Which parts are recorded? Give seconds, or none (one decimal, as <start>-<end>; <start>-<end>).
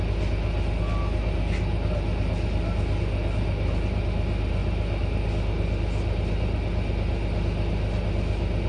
0.0-8.7